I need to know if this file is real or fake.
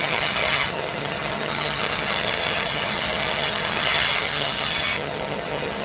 fake